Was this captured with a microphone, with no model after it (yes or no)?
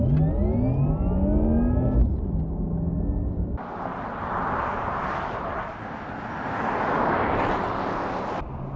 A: yes